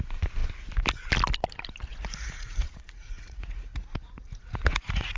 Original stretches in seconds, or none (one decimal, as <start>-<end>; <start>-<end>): 0.0-1.9